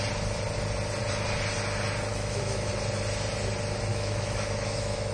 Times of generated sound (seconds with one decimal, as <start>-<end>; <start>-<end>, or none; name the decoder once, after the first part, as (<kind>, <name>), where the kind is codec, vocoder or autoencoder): 2.1-2.7 (autoencoder, DAC-VAE); 3.9-5.1